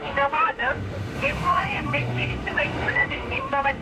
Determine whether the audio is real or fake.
fake